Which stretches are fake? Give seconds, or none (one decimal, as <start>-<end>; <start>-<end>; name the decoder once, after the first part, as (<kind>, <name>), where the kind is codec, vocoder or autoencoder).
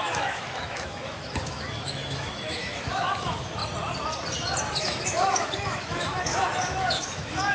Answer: 0.0-3.6 (autoencoder, DAC-VAE); 4.8-7.5